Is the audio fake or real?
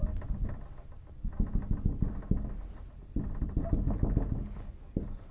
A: real